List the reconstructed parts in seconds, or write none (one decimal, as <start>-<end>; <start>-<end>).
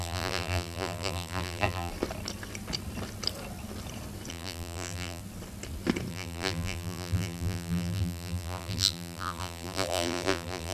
0.0-1.9; 4.3-5.2; 6.1-10.7